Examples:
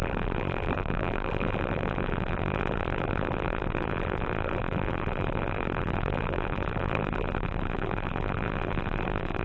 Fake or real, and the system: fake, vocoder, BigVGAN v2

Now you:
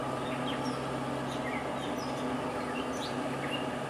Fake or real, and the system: real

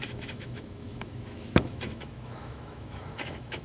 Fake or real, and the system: fake, autoencoder, DAC-VAE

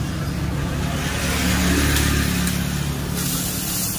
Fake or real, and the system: real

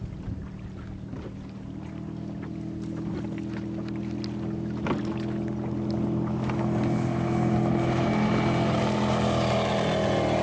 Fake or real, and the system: real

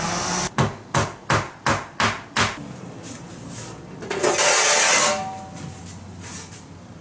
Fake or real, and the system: real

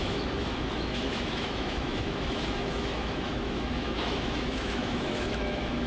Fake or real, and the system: fake, autoencoder, DAC-VAE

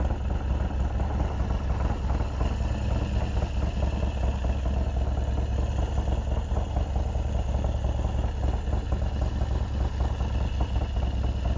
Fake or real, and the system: real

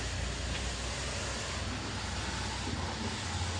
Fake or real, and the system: real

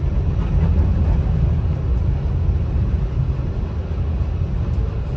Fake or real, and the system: real